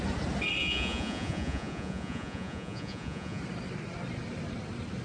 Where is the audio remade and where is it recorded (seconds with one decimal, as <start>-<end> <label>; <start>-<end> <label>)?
0.0-0.6 recorded; 0.6-3.4 remade; 3.4-5.0 recorded